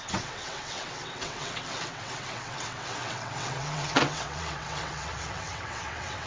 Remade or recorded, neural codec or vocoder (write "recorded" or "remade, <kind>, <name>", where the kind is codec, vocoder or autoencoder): remade, vocoder, WaveNeXt